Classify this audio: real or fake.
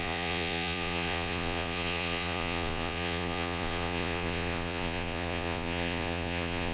fake